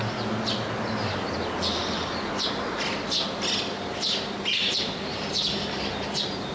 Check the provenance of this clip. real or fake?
real